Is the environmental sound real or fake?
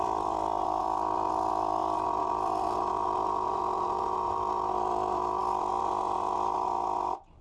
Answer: real